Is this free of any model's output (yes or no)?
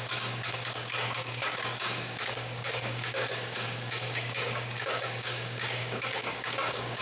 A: no